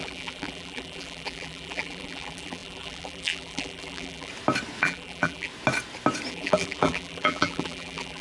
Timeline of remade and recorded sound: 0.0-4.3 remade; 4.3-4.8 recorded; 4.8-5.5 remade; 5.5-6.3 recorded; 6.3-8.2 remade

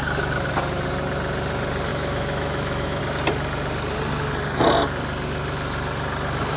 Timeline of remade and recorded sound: 0.0-1.9 recorded; 1.9-3.0 remade; 3.0-6.6 recorded

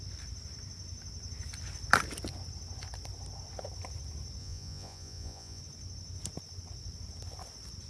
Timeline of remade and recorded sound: 0.0-4.4 recorded; 4.4-5.6 remade; 5.6-7.9 recorded